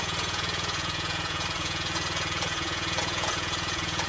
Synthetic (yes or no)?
yes